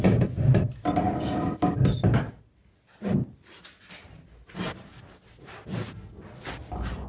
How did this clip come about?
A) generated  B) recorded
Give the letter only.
B